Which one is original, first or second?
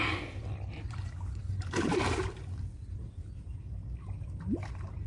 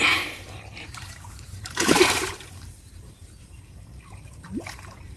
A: first